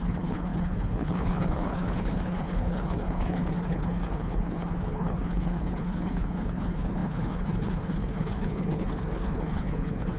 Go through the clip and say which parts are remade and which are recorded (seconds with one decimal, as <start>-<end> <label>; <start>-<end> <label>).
0.0-10.2 remade